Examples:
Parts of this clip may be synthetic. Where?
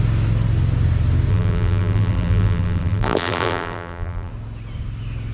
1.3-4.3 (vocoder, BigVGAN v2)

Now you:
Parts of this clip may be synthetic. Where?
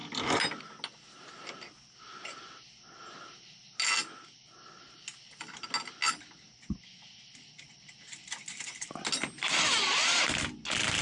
0.0-0.6 (vocoder, BigVGAN v2)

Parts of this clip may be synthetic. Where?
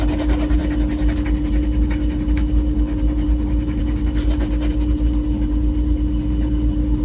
none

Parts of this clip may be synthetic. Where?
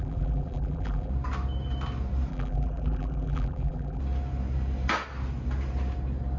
0.0-1.1 (vocoder, BigVGAN v2); 2.3-4.0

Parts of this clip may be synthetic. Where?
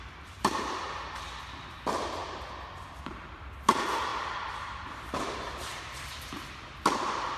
4.1-5.8 (vocoder, BigVGAN v2)